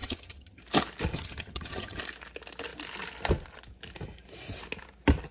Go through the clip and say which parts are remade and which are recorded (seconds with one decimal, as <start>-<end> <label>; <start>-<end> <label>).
0.0-0.6 remade; 0.6-1.1 recorded; 1.1-2.0 remade; 2.0-5.3 recorded

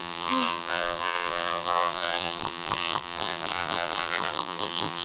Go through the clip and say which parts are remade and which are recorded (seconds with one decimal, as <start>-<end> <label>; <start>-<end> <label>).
0.0-5.0 remade

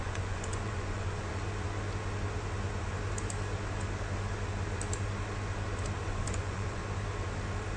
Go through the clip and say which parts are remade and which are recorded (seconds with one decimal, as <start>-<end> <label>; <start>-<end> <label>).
0.0-1.3 remade; 1.3-6.0 recorded; 6.0-6.8 remade; 6.8-7.8 recorded